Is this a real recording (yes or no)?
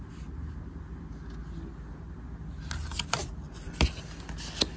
yes